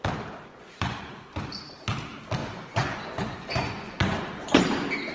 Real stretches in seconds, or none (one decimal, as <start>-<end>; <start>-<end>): 0.0-0.5; 1.4-2.4; 4.6-5.1